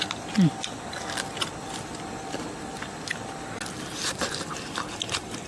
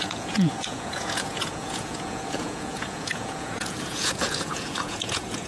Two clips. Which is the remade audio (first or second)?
second